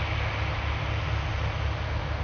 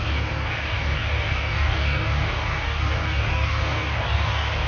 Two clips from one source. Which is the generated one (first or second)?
second